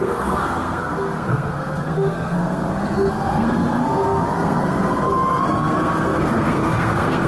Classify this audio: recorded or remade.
remade